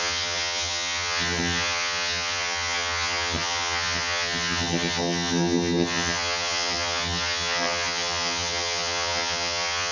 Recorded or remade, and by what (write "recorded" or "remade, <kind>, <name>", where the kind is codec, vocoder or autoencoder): remade, vocoder, HiFi-GAN